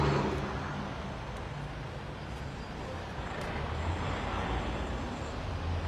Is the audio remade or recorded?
recorded